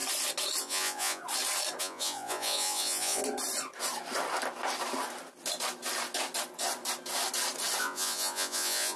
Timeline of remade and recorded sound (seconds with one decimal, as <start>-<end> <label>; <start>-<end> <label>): 0.0-0.6 recorded; 0.6-1.2 remade; 1.2-1.8 recorded; 1.8-3.2 remade; 3.2-7.8 recorded; 7.8-9.0 remade